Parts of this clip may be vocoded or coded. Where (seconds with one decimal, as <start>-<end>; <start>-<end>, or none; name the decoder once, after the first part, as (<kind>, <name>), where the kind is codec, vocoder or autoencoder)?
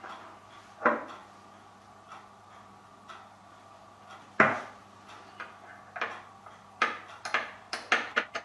none